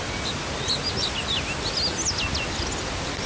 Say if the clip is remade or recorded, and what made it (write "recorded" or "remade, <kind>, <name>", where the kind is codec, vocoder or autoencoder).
recorded